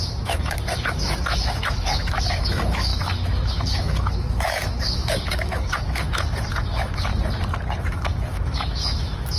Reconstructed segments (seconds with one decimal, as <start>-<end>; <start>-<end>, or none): 0.0-7.1; 7.8-9.4